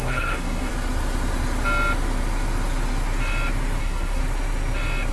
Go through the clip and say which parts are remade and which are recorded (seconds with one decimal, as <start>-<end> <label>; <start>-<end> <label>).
0.0-0.7 remade; 0.7-3.8 recorded; 3.8-4.2 remade; 4.2-5.1 recorded